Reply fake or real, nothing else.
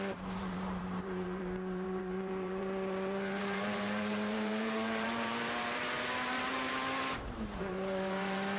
fake